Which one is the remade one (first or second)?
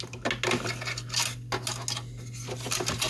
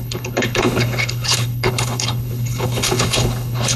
second